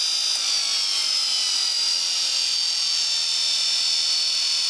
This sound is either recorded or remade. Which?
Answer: recorded